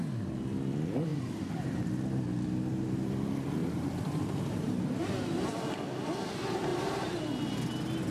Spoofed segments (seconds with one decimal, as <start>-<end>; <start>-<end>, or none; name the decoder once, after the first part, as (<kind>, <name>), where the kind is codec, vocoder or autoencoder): 1.1-1.7 (vocoder, BigVGAN v2); 3.6-5.1; 6.7-7.3